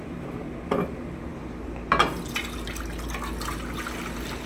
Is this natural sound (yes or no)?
yes